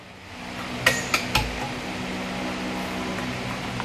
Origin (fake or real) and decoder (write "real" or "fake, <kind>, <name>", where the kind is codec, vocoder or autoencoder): real